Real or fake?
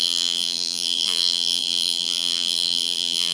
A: fake